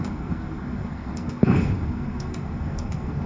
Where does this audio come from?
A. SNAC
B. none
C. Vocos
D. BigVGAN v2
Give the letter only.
A